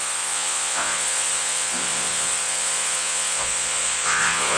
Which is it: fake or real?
fake